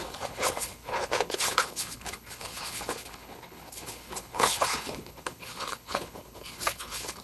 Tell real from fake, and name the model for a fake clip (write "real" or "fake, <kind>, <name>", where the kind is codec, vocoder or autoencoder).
fake, codec, HILCodec